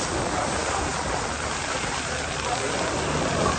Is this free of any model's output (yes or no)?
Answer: yes